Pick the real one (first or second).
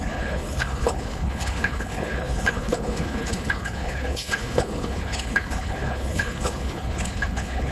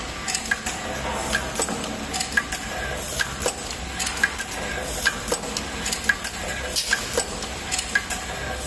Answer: second